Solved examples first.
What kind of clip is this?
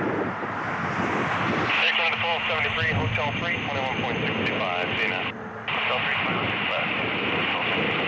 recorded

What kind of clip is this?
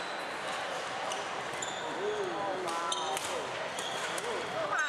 recorded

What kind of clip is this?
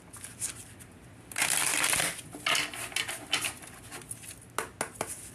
recorded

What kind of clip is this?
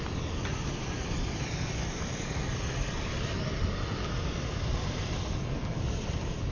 recorded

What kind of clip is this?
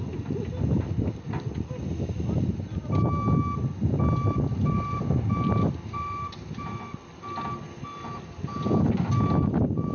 recorded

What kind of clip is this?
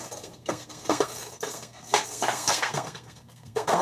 remade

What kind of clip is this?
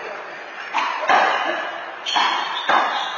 remade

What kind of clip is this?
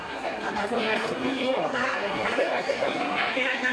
remade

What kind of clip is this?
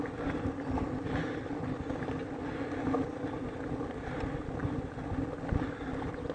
recorded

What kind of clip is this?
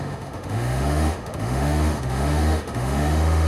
remade